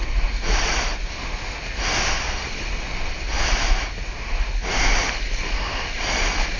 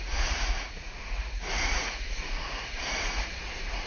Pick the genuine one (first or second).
first